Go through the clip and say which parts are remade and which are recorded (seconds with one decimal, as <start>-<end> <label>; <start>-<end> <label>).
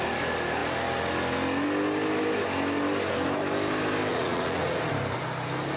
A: 0.0-4.1 recorded; 4.1-4.8 remade; 4.8-5.8 recorded